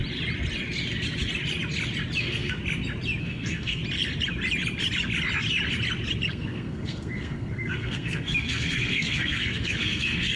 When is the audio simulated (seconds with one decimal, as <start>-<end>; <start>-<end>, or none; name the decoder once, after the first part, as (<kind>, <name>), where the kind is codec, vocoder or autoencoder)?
2.2-2.6 (codec, SNAC); 3.2-3.8; 6.3-10.4

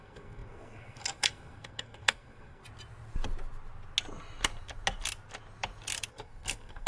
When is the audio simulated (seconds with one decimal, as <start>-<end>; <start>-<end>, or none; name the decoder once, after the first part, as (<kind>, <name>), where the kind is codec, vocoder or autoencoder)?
0.0-2.6 (codec, SNAC); 6.1-6.9

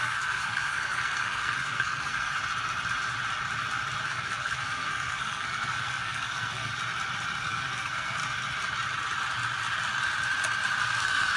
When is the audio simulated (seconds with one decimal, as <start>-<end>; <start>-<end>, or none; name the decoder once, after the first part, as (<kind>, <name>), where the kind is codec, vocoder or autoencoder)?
0.0-2.3 (codec, SNAC); 4.0-6.7; 7.4-8.2; 10.8-11.4

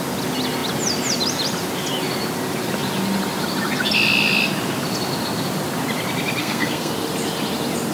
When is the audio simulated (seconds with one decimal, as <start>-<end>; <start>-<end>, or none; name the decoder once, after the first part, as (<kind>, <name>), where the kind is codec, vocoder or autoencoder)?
6.4-6.9 (codec, SNAC)

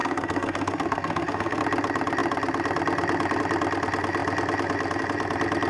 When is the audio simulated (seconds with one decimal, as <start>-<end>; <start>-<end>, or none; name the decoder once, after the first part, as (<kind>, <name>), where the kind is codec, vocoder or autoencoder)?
0.0-1.6 (codec, SNAC)